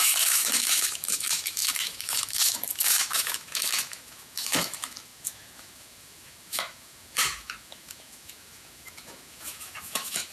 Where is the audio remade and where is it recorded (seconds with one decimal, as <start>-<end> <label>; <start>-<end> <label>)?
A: 0.0-10.3 remade